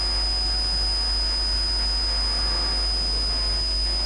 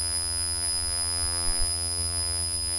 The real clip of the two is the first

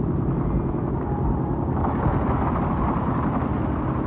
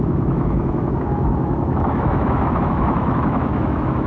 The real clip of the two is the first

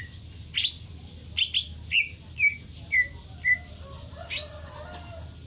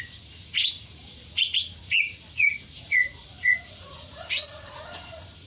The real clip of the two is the first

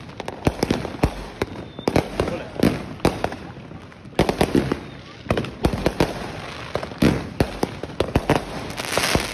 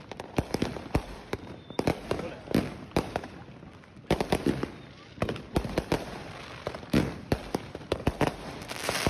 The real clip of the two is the first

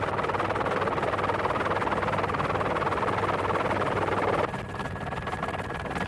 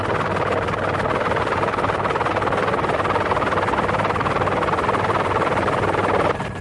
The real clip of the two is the first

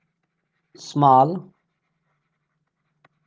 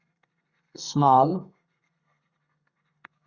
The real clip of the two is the first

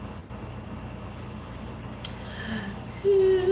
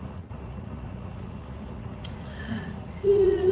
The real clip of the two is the first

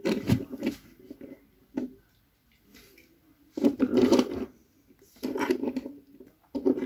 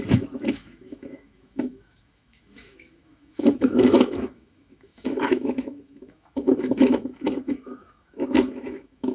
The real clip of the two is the first